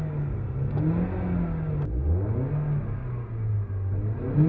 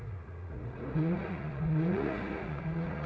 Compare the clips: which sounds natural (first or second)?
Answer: first